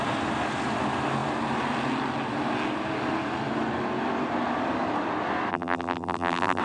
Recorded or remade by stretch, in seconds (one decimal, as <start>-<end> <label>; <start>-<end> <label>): 0.0-5.5 recorded; 5.5-6.6 remade